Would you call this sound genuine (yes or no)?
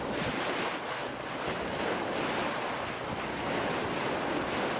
yes